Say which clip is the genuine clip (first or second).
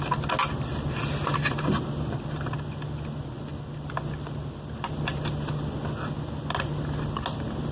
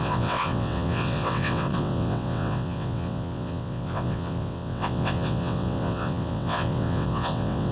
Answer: first